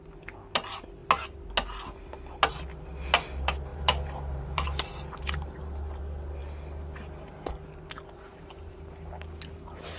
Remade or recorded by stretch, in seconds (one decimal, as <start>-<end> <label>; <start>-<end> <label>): 0.0-3.7 recorded; 3.7-6.0 remade; 6.0-10.0 recorded